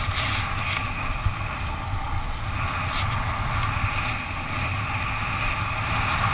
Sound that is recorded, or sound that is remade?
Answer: recorded